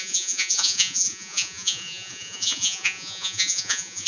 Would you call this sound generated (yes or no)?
yes